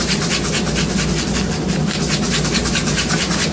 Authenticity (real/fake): real